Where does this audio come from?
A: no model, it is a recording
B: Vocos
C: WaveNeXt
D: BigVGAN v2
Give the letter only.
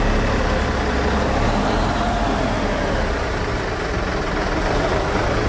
A